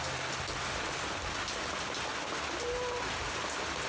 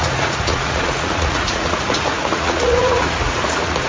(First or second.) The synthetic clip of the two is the second